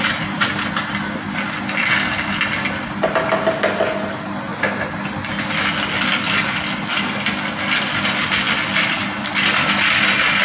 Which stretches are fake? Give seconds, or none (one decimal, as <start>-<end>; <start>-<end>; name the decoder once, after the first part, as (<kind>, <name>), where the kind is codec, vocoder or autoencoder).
none